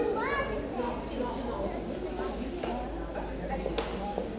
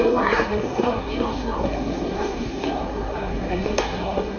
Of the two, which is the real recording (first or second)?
first